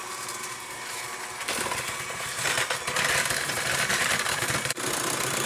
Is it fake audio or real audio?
fake